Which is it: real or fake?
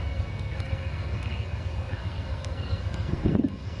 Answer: fake